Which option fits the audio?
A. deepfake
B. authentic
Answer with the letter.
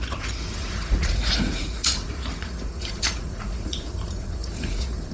A